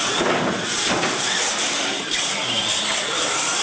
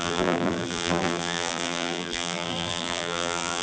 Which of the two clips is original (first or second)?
first